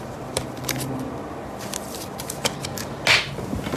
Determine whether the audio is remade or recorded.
recorded